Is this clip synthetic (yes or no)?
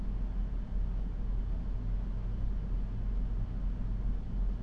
no